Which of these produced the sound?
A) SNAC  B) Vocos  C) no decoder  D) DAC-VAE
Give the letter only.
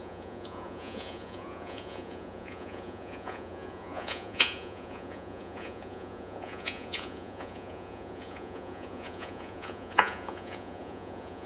B